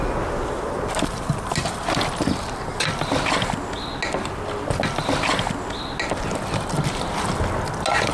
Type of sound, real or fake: real